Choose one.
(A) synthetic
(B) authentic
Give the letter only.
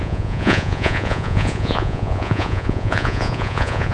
A